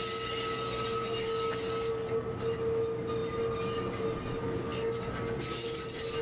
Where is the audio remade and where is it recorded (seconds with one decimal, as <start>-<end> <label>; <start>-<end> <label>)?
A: 0.0-6.2 recorded